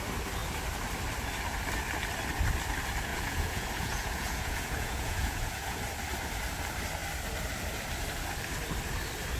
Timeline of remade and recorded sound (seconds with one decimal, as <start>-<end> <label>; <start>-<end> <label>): 0.0-3.1 recorded; 3.1-5.8 remade; 5.8-9.4 recorded